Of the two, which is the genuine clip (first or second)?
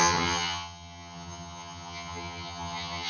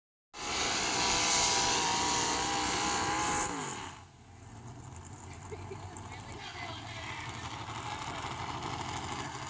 second